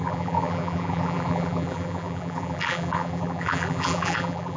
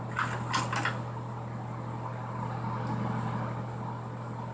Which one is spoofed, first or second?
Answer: first